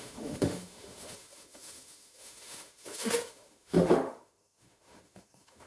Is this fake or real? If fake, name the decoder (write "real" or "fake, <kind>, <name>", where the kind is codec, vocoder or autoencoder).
fake, autoencoder, DAC-VAE